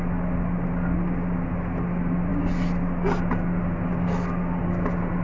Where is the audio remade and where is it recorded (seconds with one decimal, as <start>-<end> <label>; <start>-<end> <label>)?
0.0-5.2 recorded

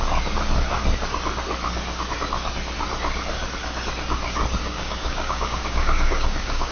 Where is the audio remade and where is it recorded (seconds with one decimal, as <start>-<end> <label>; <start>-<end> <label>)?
0.0-4.6 recorded; 4.6-6.7 remade

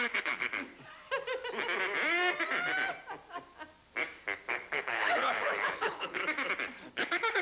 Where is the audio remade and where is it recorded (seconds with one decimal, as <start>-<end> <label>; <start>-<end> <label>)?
0.0-0.5 remade; 0.5-4.5 recorded; 4.5-6.2 remade; 6.2-6.9 recorded; 6.9-7.4 remade